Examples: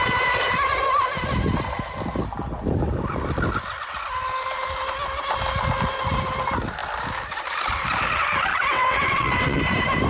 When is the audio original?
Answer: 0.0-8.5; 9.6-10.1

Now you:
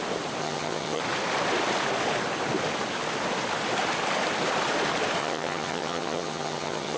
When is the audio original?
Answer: 0.0-0.4; 1.0-5.2

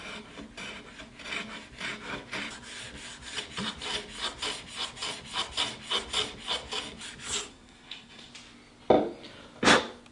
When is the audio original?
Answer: 0.0-7.5; 8.3-10.1

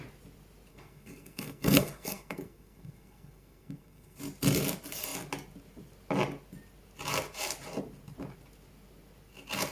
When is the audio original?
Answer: 0.0-0.7; 4.2-9.7

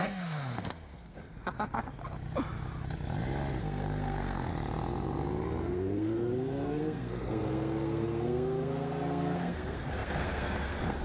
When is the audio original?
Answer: 2.0-3.6; 4.5-5.6

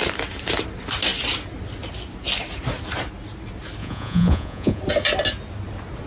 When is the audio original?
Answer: 0.0-3.8; 4.8-6.1

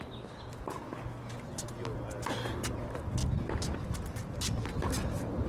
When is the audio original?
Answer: 0.0-3.2; 4.9-5.5